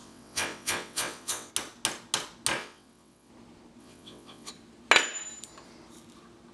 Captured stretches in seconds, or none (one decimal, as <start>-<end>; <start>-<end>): 1.5-2.6; 3.3-3.8; 4.5-6.5